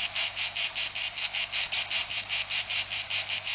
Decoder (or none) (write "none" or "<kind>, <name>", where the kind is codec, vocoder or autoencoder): none